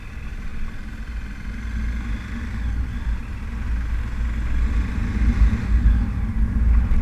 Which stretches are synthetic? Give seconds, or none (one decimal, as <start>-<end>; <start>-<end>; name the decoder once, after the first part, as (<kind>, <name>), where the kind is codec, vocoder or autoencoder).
none